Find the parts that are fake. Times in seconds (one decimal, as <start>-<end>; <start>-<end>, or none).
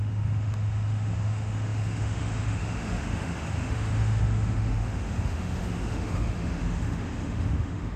0.0-8.0